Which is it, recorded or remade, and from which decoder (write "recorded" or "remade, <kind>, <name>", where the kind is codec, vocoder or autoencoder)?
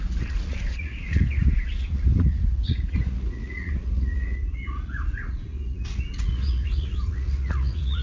remade, vocoder, Vocos